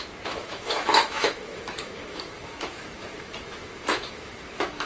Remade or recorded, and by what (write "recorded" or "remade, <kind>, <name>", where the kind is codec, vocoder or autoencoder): remade, autoencoder, DAC-VAE